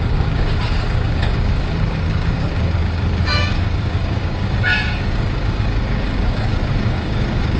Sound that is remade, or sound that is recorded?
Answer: remade